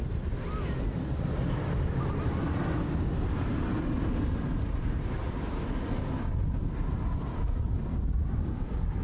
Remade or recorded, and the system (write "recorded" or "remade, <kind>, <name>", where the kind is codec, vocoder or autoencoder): recorded